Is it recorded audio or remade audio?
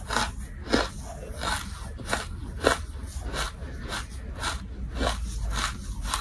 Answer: recorded